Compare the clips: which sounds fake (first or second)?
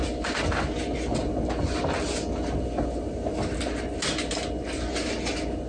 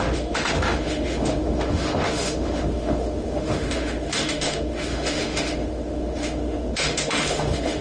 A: second